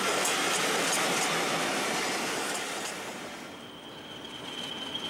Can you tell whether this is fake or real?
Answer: real